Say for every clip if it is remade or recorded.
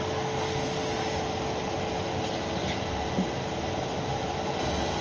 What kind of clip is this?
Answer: recorded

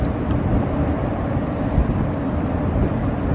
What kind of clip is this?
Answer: recorded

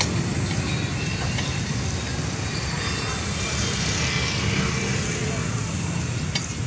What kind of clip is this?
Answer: recorded